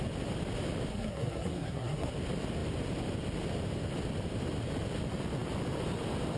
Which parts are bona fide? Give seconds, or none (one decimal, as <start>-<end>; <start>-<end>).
0.0-0.9; 2.1-6.4